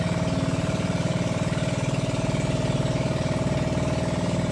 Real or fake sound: real